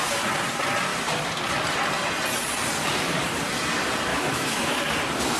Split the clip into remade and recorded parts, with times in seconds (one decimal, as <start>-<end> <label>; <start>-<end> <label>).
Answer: 0.0-4.1 recorded; 4.1-4.8 remade; 4.8-5.4 recorded